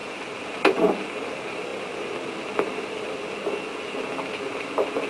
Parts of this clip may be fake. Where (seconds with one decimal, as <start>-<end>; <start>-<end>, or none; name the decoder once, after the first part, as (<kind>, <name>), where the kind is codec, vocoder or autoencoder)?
none